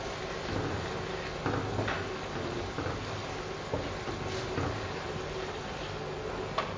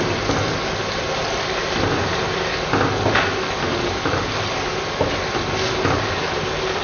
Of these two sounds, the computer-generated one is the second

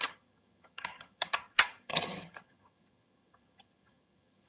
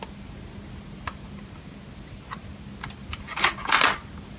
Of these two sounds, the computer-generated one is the first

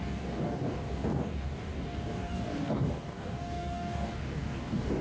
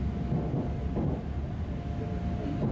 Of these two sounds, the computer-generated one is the first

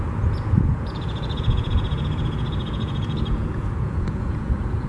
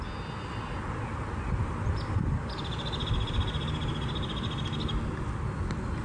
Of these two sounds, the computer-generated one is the first